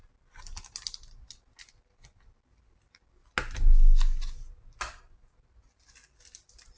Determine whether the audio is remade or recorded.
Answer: recorded